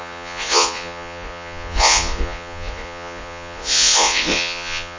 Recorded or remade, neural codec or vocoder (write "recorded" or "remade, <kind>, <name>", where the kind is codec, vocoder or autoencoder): remade, vocoder, Vocos